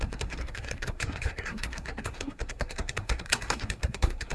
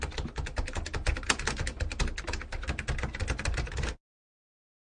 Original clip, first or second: second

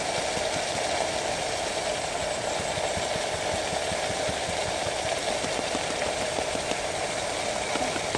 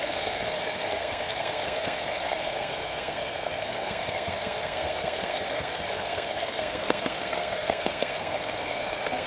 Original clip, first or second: first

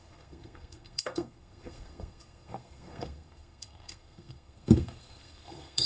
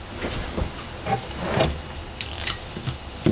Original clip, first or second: second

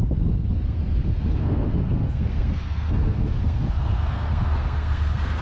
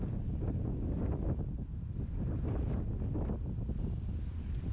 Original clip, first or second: second